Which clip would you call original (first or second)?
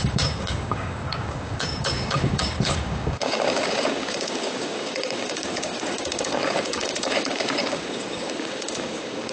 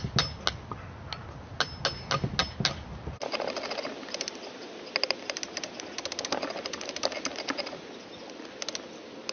second